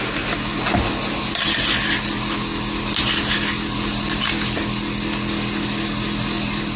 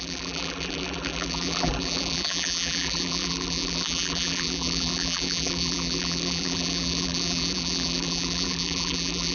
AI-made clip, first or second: second